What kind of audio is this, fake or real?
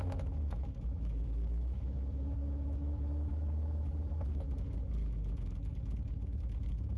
fake